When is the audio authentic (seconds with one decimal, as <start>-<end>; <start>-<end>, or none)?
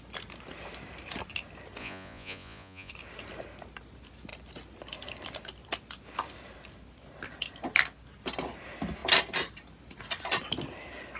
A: 0.0-1.8; 2.9-11.2